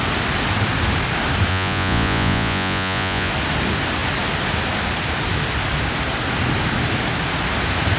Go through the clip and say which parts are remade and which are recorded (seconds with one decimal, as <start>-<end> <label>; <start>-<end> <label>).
0.0-1.5 recorded; 1.5-3.3 remade; 3.3-8.0 recorded